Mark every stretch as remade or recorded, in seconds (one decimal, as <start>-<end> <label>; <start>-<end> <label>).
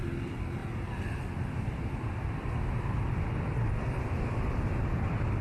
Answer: 0.0-5.4 recorded